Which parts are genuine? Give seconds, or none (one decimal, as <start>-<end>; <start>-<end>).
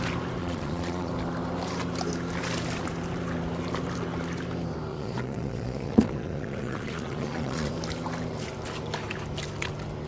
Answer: 0.0-0.4; 1.1-4.9; 7.7-10.1